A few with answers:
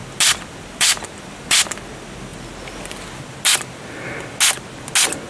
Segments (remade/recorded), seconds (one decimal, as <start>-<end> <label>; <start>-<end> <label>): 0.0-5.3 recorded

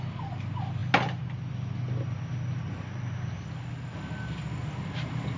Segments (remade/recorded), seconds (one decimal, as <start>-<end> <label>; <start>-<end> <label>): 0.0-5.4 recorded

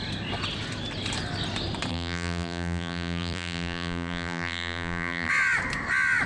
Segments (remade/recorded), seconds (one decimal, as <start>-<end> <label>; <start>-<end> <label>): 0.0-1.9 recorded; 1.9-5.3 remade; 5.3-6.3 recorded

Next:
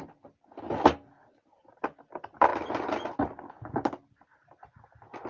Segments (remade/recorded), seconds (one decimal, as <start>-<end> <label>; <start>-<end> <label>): 0.0-5.3 recorded